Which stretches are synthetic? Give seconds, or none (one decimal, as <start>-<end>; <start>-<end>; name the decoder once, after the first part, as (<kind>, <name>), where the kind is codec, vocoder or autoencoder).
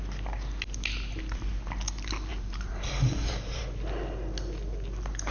2.3-3.6 (vocoder, BigVGAN v2)